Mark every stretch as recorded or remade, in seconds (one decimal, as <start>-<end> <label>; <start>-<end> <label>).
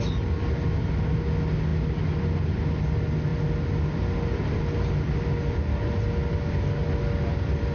0.0-7.7 recorded